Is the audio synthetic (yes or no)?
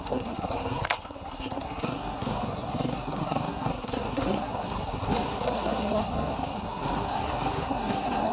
yes